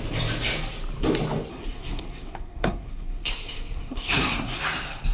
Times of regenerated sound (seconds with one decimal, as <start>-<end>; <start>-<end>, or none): 1.5-4.6

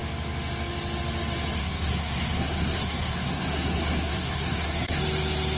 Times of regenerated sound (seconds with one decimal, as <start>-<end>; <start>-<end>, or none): 1.6-5.0

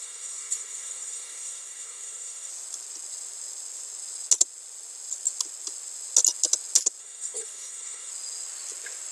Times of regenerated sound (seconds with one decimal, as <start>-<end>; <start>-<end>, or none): 0.0-2.5; 7.0-8.1

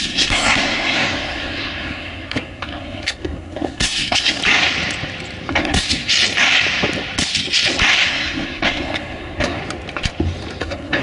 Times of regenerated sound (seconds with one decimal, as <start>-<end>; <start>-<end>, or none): 0.0-4.4; 5.5-6.1; 8.1-9.6; 10.6-11.0

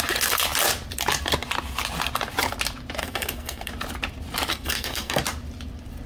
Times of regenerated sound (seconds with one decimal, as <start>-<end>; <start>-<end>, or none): 3.0-3.7; 4.5-5.2